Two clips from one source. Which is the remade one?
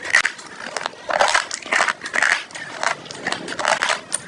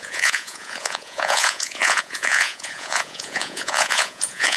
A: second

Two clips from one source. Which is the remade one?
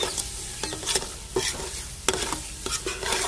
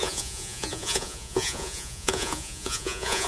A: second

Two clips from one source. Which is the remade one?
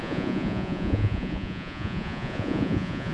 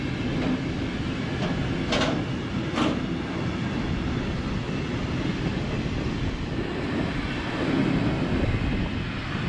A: first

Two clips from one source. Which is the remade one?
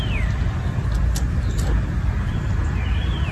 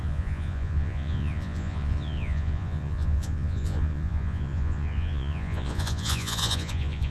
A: second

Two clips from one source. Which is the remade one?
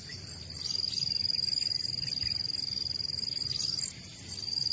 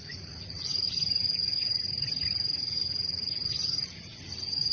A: second